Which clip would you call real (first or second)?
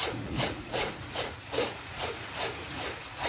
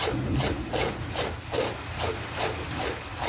second